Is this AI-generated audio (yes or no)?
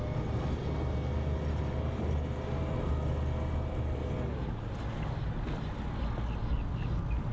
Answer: no